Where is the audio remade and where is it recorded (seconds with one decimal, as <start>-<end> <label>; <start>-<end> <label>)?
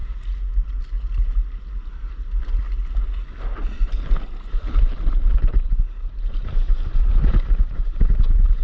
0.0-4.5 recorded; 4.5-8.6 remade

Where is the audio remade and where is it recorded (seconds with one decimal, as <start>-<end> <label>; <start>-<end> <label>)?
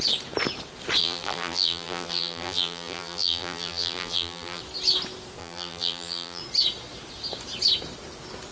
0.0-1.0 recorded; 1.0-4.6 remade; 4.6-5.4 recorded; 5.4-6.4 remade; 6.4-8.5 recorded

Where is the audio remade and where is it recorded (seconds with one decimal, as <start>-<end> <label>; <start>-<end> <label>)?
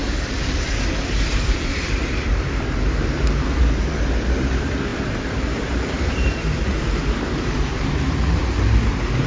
0.0-9.3 remade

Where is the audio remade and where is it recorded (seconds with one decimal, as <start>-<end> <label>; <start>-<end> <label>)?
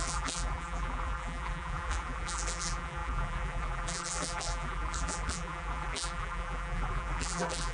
0.0-7.7 remade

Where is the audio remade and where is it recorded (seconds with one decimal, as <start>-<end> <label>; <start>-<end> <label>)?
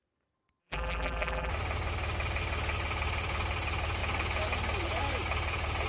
0.0-0.6 recorded; 0.6-1.5 remade; 1.5-5.9 recorded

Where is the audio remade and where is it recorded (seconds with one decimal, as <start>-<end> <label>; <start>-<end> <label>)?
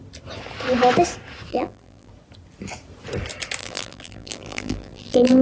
0.0-1.5 recorded; 1.5-2.1 remade; 2.1-3.6 recorded; 3.6-5.4 remade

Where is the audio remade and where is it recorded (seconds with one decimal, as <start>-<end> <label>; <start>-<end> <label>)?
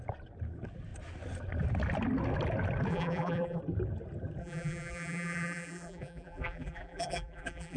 0.0-2.9 recorded; 2.9-3.6 remade; 3.6-4.4 recorded; 4.4-7.8 remade